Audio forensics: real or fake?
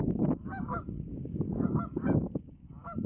fake